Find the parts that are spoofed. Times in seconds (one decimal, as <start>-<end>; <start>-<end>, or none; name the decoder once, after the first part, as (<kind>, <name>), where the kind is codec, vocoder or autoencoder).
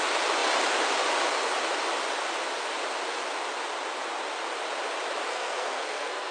5.3-6.3 (codec, SNAC)